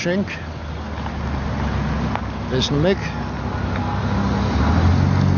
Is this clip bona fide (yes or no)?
yes